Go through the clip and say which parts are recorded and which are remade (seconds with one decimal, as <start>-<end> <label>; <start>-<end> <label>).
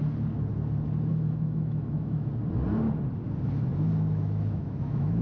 0.0-1.1 recorded; 1.1-2.3 remade; 2.3-3.7 recorded; 3.7-5.2 remade